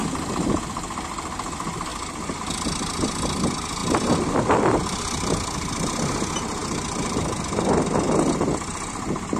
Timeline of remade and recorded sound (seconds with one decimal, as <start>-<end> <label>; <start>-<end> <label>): 0.0-9.4 recorded